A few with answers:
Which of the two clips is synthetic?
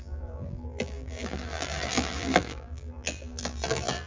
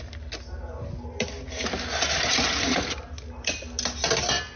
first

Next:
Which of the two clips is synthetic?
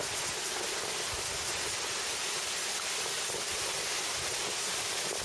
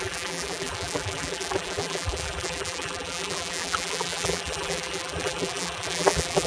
second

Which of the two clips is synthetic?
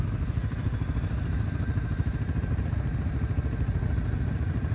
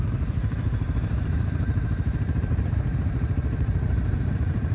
second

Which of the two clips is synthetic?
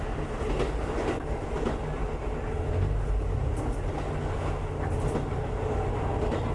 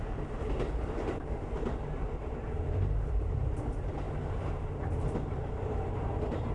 second